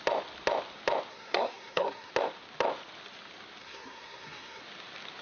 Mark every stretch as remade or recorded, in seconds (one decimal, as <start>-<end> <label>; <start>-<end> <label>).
0.0-1.1 recorded; 1.1-2.1 remade; 2.1-3.6 recorded; 3.6-4.6 remade; 4.6-5.2 recorded